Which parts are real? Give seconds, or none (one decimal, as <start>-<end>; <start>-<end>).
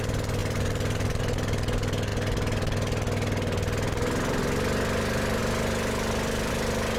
0.0-0.4; 1.2-7.0